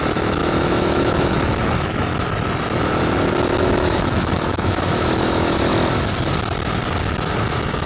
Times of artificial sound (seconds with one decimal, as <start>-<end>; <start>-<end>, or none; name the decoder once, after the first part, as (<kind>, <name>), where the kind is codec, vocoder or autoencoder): 0.0-2.1 (autoencoder, DAC-VAE); 3.6-5.7